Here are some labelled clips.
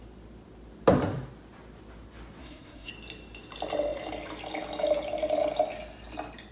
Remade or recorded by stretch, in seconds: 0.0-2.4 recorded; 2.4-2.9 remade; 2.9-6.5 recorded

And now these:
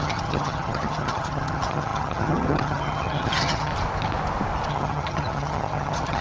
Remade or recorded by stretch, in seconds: 0.0-3.7 remade; 3.7-4.7 recorded; 4.7-6.2 remade

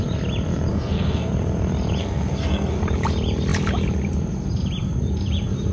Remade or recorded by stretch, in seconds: 0.0-0.7 recorded; 0.7-1.3 remade; 1.3-2.0 recorded; 2.0-2.8 remade; 2.8-5.7 recorded

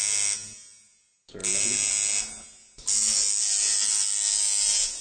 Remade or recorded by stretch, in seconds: 0.0-5.0 recorded